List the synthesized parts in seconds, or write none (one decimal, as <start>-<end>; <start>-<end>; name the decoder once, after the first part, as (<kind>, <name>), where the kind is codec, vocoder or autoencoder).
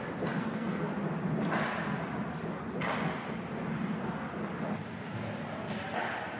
0.4-0.9 (codec, SNAC)